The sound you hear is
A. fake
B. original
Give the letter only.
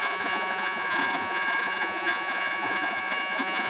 A